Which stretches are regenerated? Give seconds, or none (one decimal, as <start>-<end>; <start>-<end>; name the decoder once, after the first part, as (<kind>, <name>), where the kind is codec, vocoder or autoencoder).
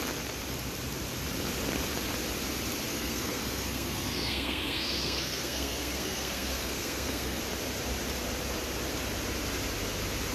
2.9-7.4 (codec, SNAC)